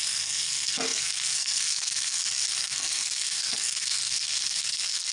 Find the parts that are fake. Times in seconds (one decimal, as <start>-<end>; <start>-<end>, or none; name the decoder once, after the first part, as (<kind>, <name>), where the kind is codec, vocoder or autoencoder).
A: 0.0-5.1 (codec, SNAC)